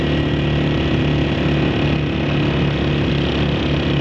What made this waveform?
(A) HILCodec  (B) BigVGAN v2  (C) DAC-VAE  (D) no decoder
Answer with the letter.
D